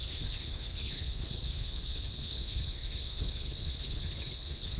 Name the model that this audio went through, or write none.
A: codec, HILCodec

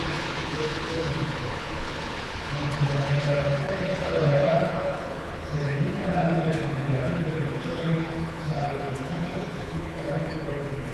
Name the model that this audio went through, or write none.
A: codec, HILCodec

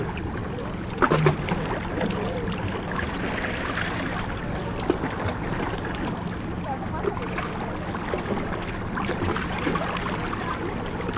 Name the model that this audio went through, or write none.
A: none